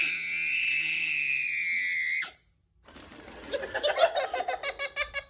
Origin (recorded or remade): recorded